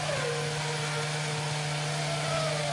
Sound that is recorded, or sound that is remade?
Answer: recorded